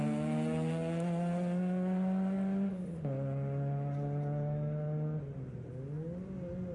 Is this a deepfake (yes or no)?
no